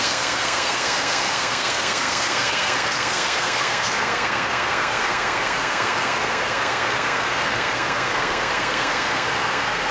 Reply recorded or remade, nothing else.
remade